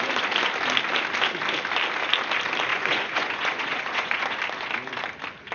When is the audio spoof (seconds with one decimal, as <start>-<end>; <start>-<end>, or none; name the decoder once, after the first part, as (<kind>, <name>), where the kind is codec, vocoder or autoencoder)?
2.7-4.4 (vocoder, Vocos)